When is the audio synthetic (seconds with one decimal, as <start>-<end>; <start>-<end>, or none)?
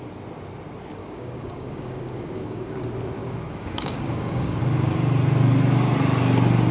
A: 1.0-2.8; 3.2-4.6